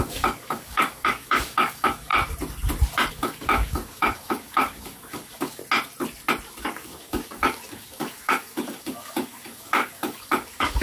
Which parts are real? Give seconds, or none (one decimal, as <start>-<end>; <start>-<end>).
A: 2.1-3.1; 5.6-6.6